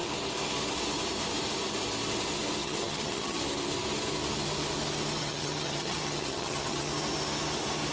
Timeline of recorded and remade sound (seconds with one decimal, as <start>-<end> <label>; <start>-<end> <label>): 0.0-2.6 recorded; 2.6-3.4 remade; 3.4-5.2 recorded; 5.2-6.9 remade; 6.9-7.9 recorded